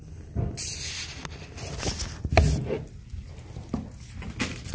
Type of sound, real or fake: real